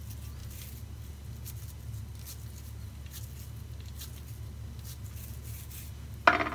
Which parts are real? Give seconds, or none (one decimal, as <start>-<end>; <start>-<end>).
0.0-6.5